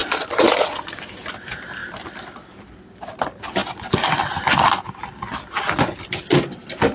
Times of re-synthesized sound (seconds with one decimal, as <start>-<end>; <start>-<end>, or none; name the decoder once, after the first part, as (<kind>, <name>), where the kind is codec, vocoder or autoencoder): 0.0-1.0 (vocoder, Vocos)